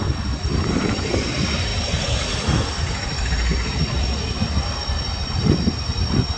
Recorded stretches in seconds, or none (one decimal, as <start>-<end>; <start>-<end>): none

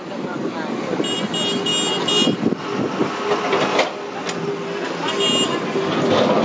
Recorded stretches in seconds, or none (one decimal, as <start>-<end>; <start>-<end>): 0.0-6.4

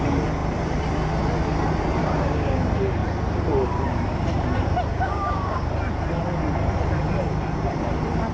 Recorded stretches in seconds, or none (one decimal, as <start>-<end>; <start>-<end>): 0.0-2.0; 2.6-4.9; 5.7-8.3